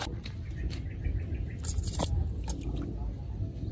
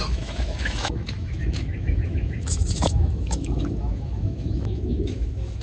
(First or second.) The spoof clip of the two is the second